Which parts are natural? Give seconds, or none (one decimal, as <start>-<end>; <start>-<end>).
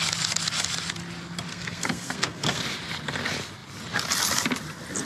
0.0-1.5; 2.6-5.1